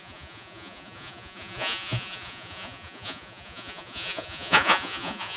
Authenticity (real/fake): fake